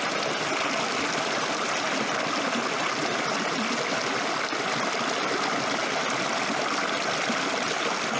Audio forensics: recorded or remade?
recorded